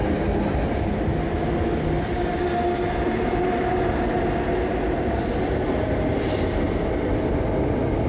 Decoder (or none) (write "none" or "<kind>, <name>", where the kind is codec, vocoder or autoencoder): none